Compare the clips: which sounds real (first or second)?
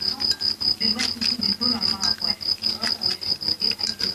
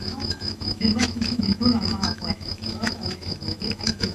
first